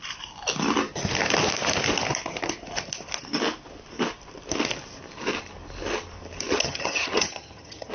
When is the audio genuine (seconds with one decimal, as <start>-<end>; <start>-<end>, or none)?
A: 0.0-6.5